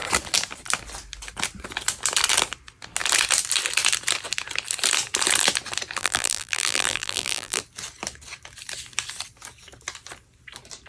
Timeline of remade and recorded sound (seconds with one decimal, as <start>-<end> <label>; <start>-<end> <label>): 0.0-6.0 recorded; 6.0-7.6 remade; 7.6-10.9 recorded